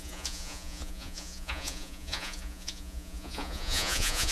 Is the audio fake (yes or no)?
yes